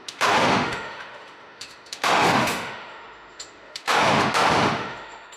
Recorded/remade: remade